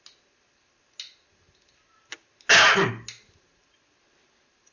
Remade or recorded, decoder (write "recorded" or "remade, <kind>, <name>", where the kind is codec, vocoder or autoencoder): recorded